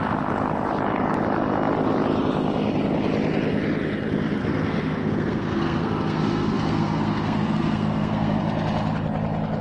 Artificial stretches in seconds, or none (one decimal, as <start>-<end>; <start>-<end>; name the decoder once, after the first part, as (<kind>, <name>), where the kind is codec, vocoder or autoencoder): 4.4-8.4 (codec, SNAC)